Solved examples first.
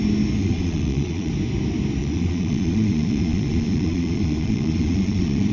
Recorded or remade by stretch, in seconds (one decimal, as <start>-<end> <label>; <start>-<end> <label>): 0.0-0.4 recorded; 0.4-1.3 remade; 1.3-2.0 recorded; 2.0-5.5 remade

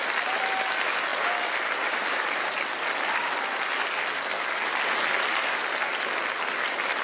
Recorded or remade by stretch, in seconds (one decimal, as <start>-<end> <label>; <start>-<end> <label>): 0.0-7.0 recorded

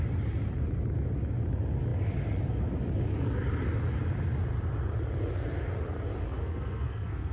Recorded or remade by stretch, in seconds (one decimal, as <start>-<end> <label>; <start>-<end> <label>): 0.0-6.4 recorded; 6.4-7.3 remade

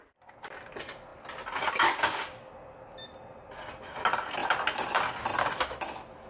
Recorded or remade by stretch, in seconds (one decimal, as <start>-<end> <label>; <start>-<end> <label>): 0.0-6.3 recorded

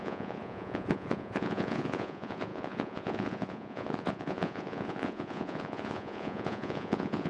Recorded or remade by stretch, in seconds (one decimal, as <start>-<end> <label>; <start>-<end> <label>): 0.0-7.3 remade

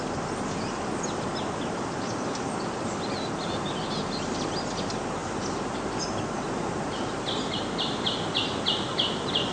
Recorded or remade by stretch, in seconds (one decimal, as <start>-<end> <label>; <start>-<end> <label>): 0.0-9.5 recorded